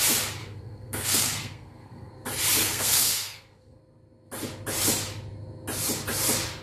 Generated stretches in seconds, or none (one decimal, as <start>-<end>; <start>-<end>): 0.4-2.1; 2.6-3.8